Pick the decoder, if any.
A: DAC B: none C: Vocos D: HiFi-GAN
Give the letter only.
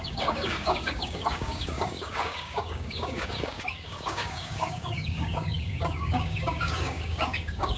A